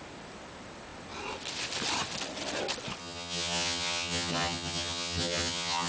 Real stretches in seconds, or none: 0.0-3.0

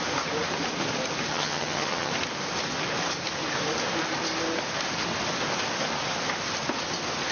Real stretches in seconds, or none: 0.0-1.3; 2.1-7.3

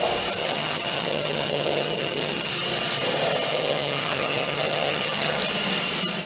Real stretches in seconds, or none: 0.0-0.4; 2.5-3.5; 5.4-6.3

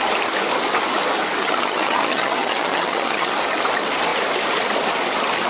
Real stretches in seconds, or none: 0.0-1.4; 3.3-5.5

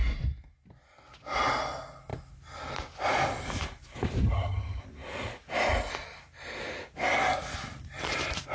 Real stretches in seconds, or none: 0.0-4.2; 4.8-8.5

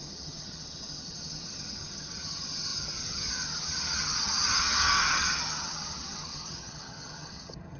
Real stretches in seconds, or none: none

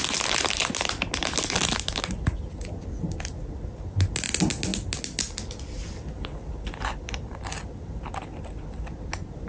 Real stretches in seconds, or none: 0.0-9.5

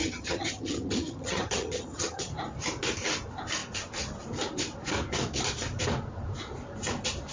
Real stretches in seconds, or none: 2.3-7.3